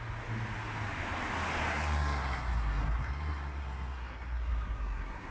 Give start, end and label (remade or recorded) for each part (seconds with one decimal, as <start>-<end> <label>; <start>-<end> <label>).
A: 0.0-1.7 recorded; 1.7-5.3 remade